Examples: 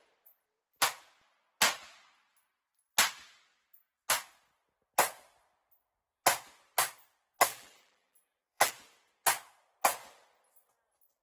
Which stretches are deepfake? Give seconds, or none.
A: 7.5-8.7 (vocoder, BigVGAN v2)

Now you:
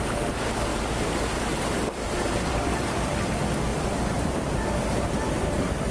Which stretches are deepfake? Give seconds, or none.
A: 0.7-2.5 (vocoder, BigVGAN v2); 3.7-5.9

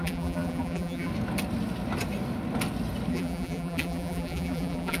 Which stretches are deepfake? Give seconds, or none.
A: 0.0-1.1 (vocoder, BigVGAN v2); 3.1-5.0

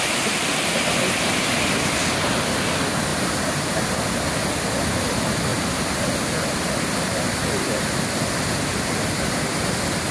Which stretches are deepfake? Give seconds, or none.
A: 3.1-3.9 (vocoder, BigVGAN v2); 5.5-9.4